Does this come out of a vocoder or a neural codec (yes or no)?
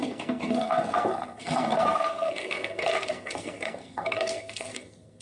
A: yes